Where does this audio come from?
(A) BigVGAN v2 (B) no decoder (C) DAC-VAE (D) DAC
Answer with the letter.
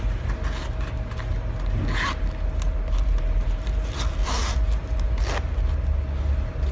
B